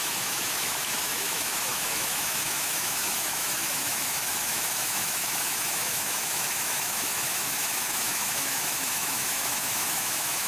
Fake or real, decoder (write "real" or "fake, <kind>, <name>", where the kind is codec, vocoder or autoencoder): fake, autoencoder, DAC-VAE